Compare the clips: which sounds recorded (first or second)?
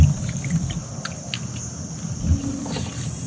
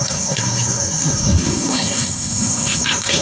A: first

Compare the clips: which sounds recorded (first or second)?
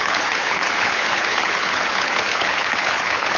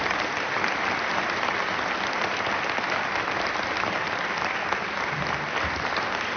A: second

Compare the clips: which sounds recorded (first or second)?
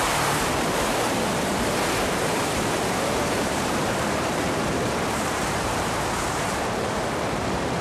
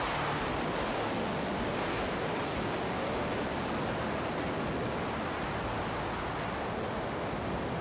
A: second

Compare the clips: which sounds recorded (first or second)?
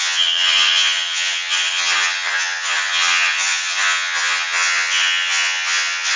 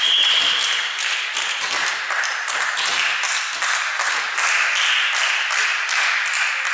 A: second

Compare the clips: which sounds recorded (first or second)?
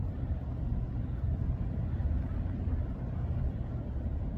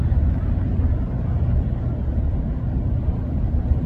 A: second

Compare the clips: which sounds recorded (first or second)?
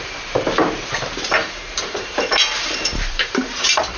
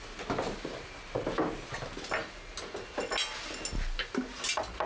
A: second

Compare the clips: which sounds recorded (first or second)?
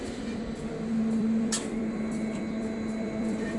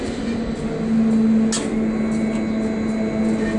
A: second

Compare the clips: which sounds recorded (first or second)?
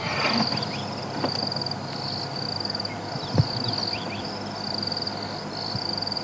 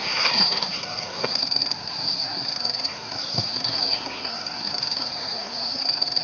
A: first